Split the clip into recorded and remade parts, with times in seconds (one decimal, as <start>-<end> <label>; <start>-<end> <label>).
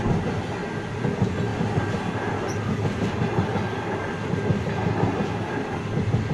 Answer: 0.0-6.3 recorded